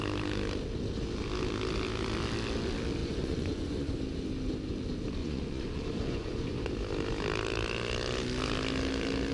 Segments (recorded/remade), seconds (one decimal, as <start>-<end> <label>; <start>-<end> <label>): 0.0-3.0 recorded; 3.0-3.9 remade; 3.9-5.2 recorded; 5.2-6.7 remade; 6.7-9.3 recorded